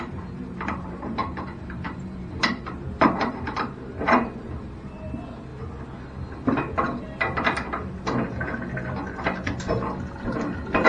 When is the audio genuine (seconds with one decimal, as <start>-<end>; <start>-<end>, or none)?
5.5-10.9